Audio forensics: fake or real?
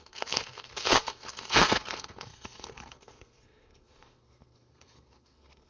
fake